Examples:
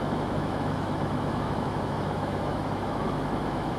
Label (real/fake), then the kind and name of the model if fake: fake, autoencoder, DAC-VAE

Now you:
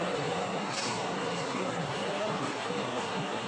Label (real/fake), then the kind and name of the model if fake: fake, codec, SNAC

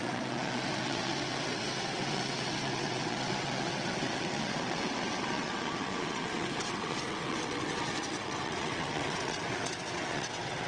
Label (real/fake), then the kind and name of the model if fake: fake, vocoder, WaveNeXt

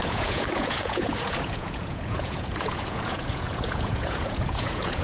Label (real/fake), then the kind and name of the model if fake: fake, vocoder, Vocos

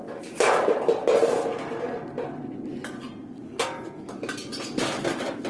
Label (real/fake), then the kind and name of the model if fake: real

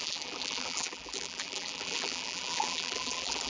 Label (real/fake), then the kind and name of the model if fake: fake, vocoder, BigVGAN v2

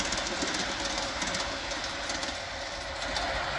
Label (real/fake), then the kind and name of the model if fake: real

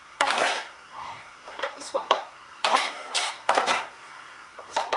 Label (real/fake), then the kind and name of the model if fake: fake, codec, SNAC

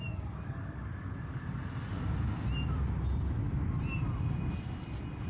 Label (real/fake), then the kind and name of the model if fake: real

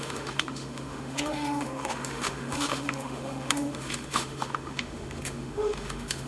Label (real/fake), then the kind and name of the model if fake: fake, autoencoder, DAC-VAE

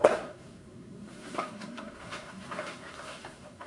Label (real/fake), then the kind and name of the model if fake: fake, codec, SNAC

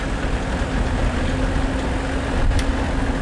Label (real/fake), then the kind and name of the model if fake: real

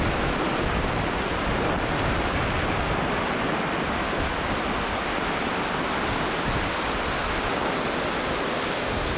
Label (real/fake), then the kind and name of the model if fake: real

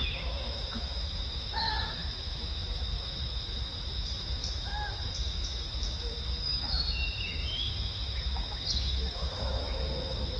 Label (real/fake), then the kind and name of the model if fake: fake, autoencoder, DAC-VAE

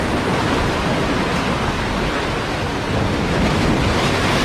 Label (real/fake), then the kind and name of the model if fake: real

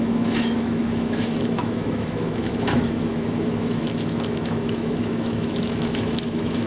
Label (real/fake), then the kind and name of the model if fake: fake, autoencoder, DAC-VAE